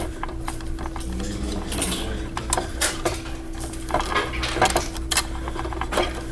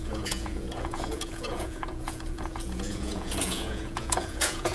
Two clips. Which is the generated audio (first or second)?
second